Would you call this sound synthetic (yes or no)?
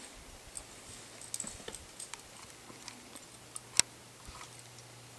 no